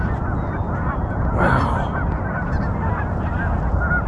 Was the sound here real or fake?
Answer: real